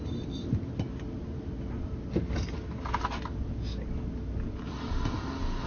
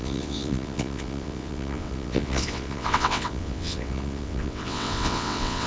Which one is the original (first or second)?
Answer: first